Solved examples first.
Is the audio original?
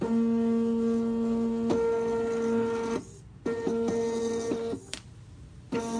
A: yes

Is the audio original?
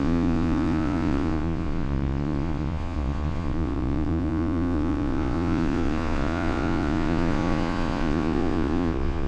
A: no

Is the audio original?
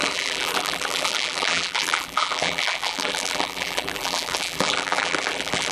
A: no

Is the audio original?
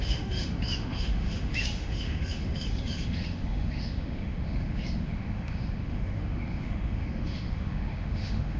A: no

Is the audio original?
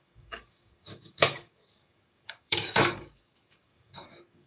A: no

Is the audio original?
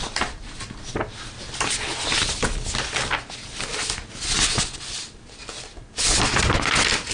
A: yes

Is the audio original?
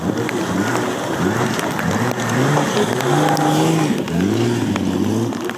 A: yes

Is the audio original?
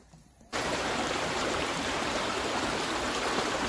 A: no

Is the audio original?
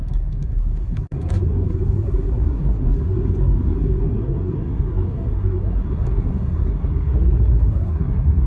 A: no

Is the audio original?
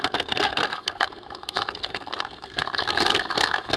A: no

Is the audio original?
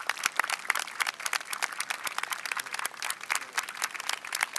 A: yes